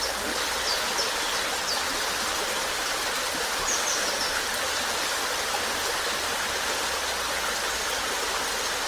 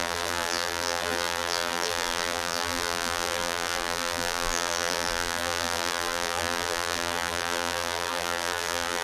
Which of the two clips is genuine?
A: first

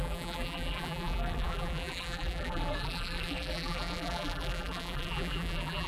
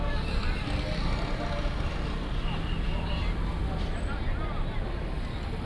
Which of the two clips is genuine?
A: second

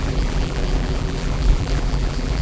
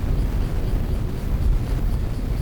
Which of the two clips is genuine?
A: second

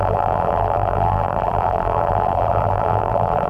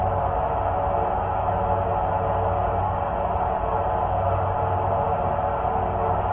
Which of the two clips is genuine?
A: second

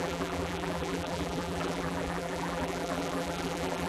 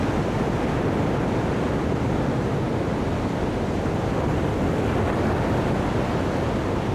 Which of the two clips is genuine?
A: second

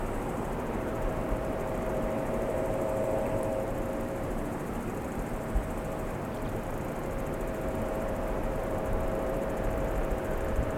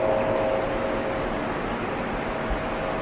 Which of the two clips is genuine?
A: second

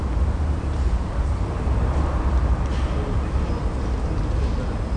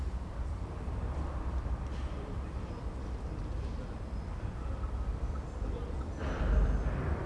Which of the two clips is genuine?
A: first